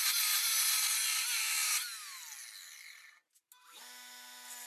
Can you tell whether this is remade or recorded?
recorded